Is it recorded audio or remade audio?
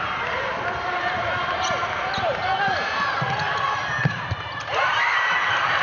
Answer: remade